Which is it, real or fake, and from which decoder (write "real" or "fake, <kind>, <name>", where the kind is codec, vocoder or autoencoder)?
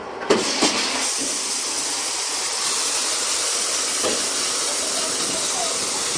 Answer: real